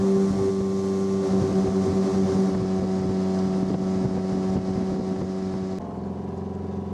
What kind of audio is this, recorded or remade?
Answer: recorded